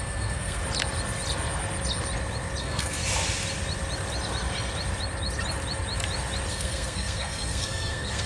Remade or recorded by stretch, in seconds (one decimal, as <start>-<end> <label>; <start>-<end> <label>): 0.0-0.6 remade; 0.6-2.6 recorded; 2.6-3.0 remade; 3.0-6.5 recorded; 6.5-8.3 remade